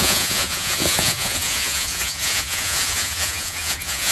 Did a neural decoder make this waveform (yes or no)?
yes